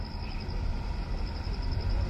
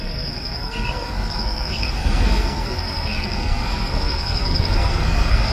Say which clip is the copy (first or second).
second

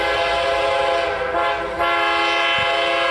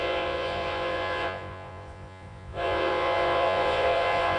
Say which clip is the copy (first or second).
second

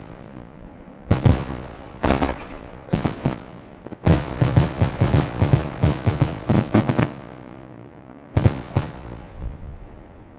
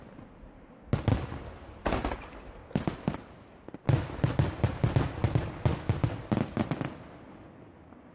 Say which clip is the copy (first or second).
first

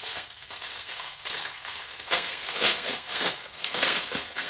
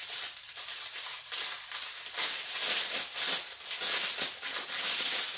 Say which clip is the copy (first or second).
first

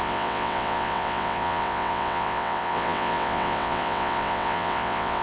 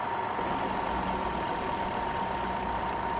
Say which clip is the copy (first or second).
first